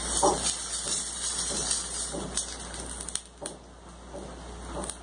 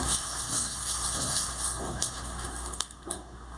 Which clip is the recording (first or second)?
first